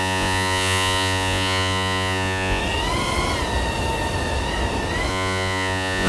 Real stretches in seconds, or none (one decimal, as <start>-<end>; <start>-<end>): 2.6-5.1